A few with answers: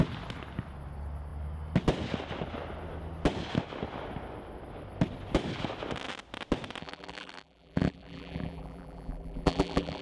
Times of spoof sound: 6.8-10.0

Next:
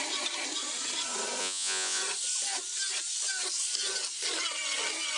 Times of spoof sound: 1.4-2.0

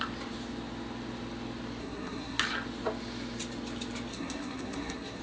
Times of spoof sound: 1.8-2.4; 4.1-5.2

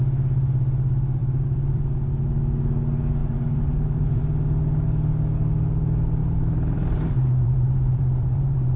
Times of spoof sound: 1.2-1.8; 3.2-4.2; 6.2-8.8